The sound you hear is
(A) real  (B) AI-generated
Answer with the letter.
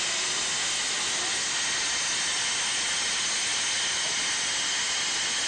A